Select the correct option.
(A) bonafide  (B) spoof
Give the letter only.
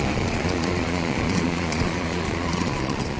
B